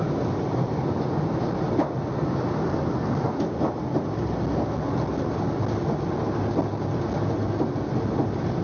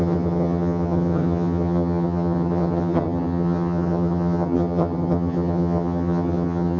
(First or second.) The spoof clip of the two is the second